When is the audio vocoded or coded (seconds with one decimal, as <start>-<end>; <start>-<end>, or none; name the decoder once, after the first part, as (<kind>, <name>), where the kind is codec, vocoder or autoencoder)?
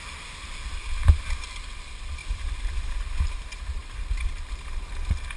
2.2-3.1 (vocoder, BigVGAN v2); 3.8-4.5